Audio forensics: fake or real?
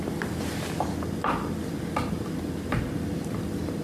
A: real